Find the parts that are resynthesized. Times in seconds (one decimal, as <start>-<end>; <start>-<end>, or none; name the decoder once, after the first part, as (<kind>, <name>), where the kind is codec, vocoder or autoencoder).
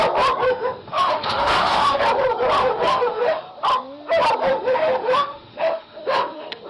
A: 0.5-2.0 (autoencoder, DAC-VAE); 2.6-3.5; 4.5-6.7